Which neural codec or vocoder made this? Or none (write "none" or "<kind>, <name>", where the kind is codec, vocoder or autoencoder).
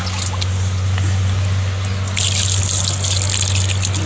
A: none